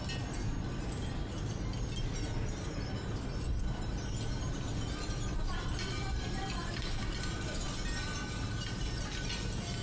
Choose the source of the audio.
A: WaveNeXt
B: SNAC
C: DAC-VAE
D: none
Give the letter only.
D